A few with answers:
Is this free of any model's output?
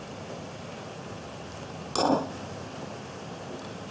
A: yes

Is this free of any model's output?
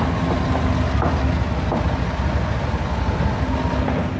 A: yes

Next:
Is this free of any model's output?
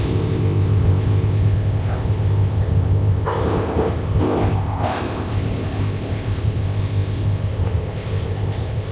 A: no